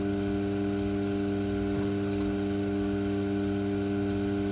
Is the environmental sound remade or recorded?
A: recorded